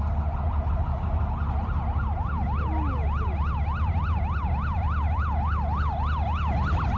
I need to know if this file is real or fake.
real